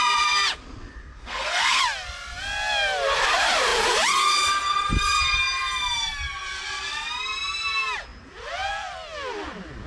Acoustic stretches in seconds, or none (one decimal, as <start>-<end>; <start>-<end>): 0.0-1.0; 1.8-9.9